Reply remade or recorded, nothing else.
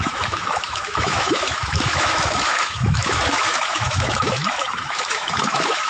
remade